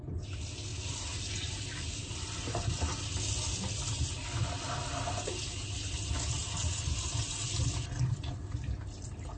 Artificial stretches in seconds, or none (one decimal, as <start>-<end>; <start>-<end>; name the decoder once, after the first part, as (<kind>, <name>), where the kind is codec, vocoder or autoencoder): none